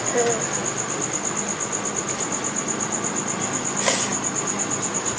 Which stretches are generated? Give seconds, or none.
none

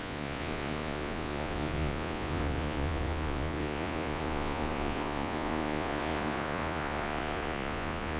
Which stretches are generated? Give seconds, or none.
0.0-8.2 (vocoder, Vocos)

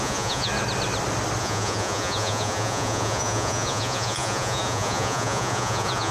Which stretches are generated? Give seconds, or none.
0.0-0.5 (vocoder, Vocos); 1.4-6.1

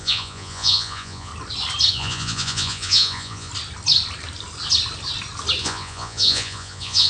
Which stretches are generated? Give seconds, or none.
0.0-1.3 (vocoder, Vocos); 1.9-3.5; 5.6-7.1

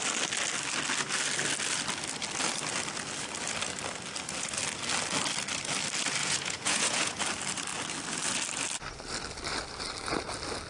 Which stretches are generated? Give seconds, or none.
6.2-7.2 (vocoder, Vocos)

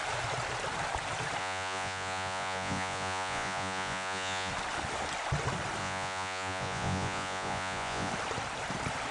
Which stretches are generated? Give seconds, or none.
1.4-4.5 (vocoder, Vocos); 5.8-8.1